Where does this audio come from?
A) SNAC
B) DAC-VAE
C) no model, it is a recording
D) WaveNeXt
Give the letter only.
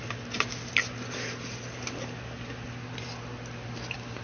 C